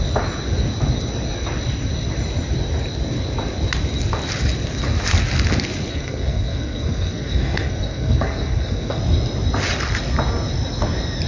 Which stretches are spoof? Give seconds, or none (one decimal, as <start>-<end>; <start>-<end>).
5.9-9.0